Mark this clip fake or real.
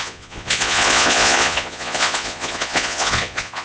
fake